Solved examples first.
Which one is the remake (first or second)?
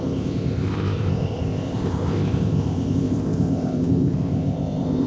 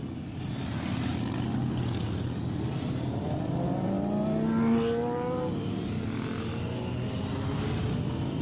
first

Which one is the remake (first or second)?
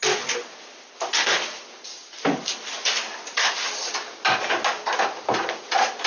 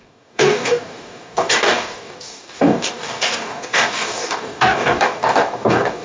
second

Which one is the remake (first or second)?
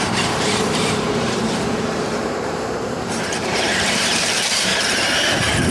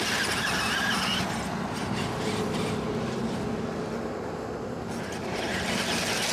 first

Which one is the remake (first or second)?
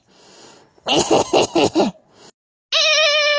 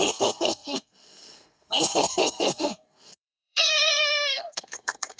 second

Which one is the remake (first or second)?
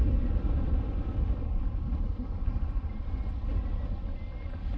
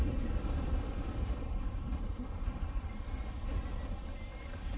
second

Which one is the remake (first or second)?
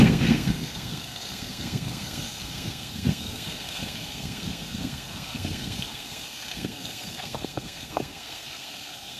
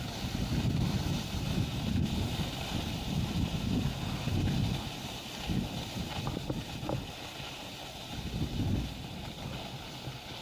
first